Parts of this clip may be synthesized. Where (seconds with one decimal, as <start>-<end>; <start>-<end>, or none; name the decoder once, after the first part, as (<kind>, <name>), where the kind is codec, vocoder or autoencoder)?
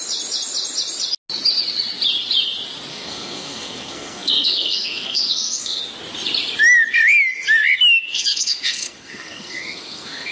2.9-5.8 (codec, SNAC); 8.1-10.3